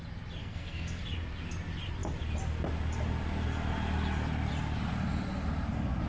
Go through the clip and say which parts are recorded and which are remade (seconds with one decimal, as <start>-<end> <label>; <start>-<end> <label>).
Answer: 0.0-0.4 recorded; 0.4-1.0 remade; 1.0-6.1 recorded